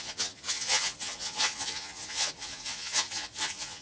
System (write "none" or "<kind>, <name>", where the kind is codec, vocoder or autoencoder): vocoder, Vocos